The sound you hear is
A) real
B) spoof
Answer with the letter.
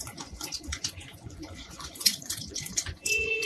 B